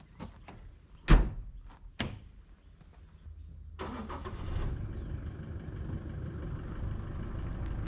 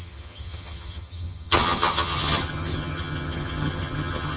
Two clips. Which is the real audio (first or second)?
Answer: first